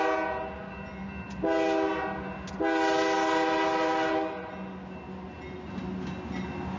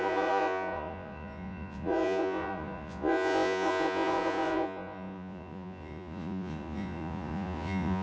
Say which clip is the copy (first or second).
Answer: second